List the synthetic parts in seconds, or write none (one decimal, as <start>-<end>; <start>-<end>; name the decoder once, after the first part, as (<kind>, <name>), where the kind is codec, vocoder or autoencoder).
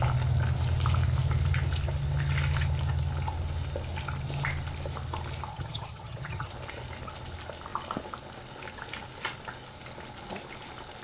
5.5-6.5 (vocoder, HiFi-GAN)